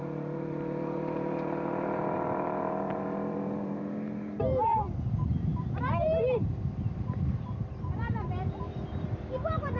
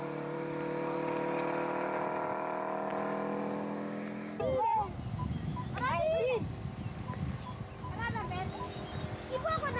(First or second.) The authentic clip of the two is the second